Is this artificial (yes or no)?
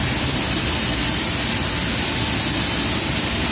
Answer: no